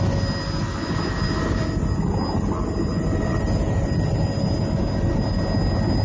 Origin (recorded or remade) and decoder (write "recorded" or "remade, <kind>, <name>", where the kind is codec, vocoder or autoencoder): recorded